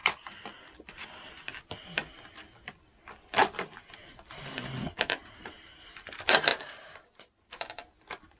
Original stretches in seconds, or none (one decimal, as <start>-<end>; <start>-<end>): 0.0-5.2; 5.7-6.5; 7.5-8.4